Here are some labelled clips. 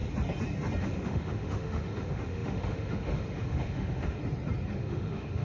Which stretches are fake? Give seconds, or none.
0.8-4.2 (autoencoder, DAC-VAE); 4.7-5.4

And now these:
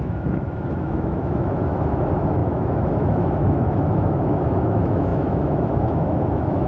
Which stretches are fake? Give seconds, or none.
0.0-6.7 (autoencoder, DAC-VAE)

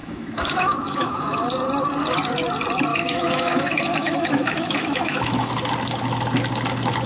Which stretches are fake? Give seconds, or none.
0.0-1.5 (autoencoder, DAC-VAE); 2.9-5.5

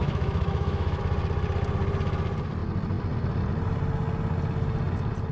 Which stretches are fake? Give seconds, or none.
0.0-1.0 (autoencoder, DAC-VAE)